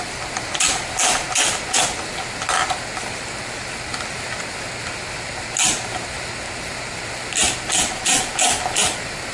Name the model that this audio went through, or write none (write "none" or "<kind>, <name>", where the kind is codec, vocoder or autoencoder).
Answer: none